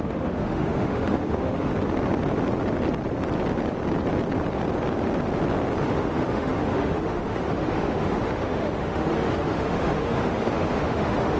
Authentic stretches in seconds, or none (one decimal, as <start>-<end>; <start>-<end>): 1.7-5.8